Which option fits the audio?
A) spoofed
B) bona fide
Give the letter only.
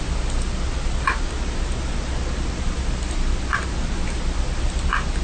B